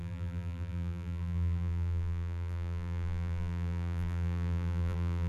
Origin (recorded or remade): remade